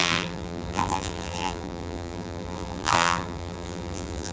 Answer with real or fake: fake